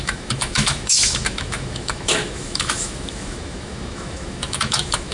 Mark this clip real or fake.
fake